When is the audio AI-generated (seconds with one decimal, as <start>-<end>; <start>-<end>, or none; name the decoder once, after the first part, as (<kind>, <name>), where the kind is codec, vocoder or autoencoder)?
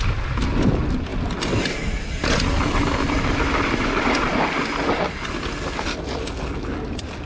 none